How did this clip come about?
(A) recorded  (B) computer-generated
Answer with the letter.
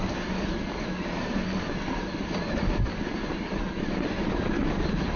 A